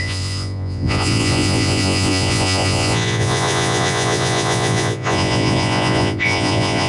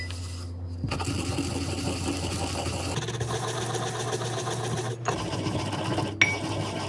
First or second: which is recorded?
second